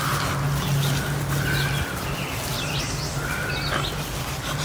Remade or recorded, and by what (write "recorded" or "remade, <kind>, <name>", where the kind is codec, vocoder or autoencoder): recorded